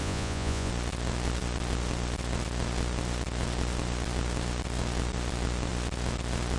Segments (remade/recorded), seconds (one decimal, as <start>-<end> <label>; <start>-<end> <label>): 0.0-0.7 remade; 0.7-6.6 recorded